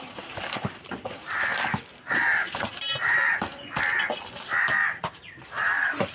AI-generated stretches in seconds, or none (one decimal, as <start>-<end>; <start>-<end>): 0.0-1.5; 2.1-3.5; 4.6-6.1